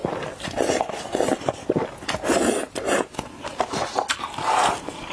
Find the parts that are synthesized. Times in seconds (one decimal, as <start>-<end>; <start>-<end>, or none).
0.0-0.8